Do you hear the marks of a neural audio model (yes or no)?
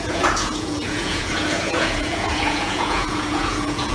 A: yes